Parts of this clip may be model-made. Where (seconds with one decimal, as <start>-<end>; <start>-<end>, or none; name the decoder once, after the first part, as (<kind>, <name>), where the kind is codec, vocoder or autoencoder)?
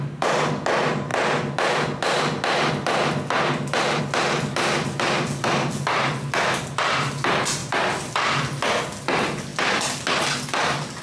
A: 7.6-8.1 (vocoder, BigVGAN v2)